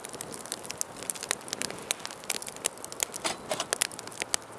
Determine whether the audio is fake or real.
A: real